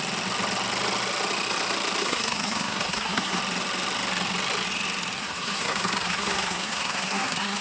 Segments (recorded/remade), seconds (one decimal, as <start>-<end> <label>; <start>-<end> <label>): 0.0-2.0 recorded; 2.0-3.4 remade; 3.4-5.2 recorded; 5.2-7.6 remade

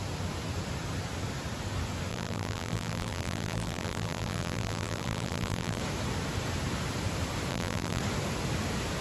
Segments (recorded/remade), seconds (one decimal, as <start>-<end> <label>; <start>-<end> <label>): 0.0-2.1 recorded; 2.1-5.8 remade; 5.8-7.5 recorded; 7.5-8.0 remade; 8.0-9.0 recorded